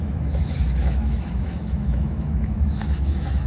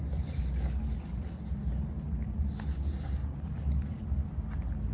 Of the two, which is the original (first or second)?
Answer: second